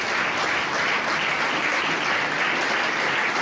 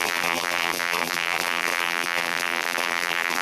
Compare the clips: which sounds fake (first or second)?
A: second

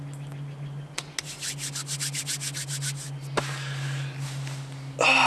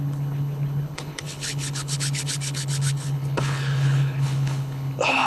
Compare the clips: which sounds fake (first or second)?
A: second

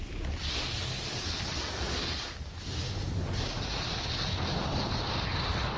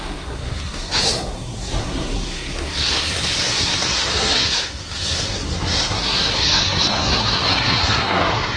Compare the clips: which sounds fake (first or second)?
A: second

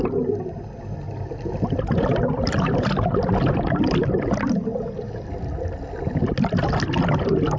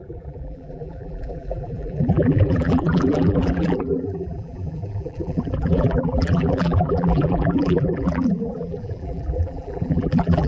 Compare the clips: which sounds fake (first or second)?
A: second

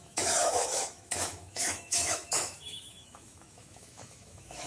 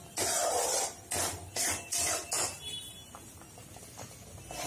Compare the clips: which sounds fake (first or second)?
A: first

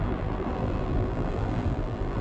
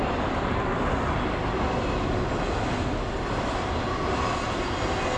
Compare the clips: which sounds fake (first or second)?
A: first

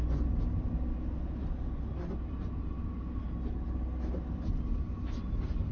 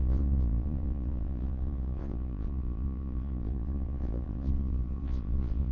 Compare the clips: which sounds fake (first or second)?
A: second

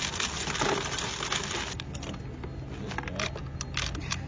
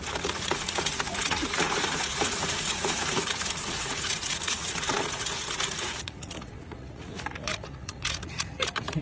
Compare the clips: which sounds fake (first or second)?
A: second